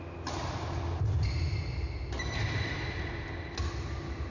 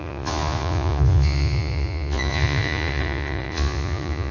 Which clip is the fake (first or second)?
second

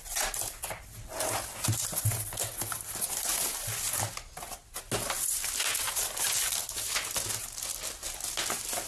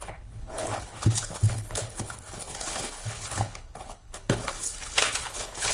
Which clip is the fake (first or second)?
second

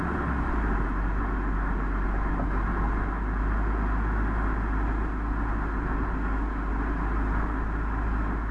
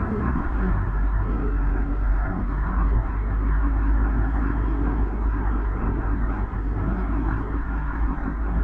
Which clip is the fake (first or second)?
second